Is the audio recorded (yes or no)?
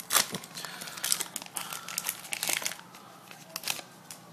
yes